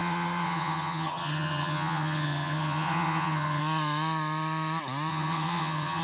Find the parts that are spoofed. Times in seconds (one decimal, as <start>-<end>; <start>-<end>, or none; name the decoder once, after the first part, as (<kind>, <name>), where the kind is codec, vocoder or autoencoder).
0.0-3.6 (vocoder, HiFi-GAN); 5.1-6.0